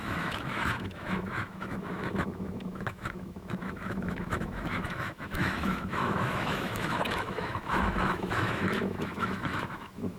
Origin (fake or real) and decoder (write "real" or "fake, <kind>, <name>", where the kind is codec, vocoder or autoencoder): fake, autoencoder, DAC-VAE